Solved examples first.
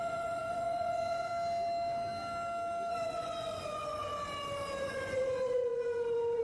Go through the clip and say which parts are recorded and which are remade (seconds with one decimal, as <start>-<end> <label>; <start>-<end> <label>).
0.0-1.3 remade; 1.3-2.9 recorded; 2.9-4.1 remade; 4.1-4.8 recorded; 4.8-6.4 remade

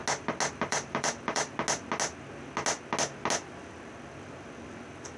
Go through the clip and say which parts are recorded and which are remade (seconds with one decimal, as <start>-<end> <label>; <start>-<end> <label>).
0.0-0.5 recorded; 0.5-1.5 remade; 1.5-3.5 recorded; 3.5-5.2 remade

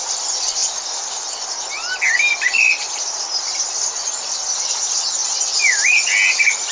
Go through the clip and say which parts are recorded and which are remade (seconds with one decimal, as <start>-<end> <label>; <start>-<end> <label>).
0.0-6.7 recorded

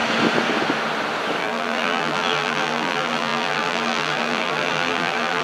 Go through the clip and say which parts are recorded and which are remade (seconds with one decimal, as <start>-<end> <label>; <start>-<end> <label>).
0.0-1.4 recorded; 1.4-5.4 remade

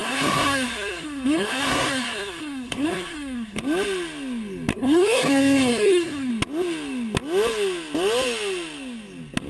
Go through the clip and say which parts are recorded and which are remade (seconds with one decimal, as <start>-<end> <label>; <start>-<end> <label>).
0.0-3.6 remade; 3.6-4.7 recorded; 4.7-6.3 remade; 6.3-9.5 recorded

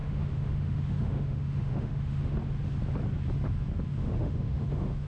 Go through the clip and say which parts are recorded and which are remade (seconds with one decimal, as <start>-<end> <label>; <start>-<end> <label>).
0.0-2.3 remade; 2.3-4.0 recorded; 4.0-5.1 remade